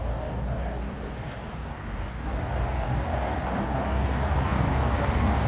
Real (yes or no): no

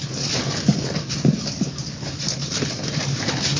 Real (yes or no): yes